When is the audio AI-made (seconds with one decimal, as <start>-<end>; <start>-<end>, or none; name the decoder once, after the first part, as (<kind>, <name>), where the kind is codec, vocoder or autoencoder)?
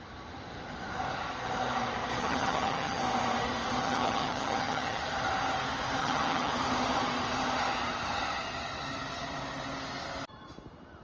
2.2-3.0 (vocoder, HiFi-GAN); 3.8-5.0; 6.0-6.5